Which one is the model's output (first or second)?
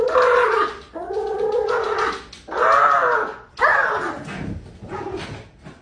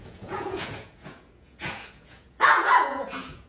second